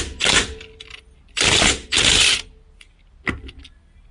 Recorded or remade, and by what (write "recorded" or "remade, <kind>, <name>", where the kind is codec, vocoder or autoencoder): recorded